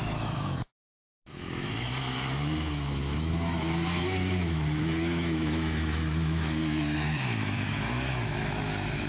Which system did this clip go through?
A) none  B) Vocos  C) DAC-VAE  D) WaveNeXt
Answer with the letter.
C